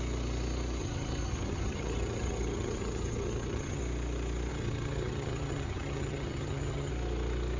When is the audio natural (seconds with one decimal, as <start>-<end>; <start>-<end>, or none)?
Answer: 0.0-0.8; 3.8-4.5; 6.9-7.6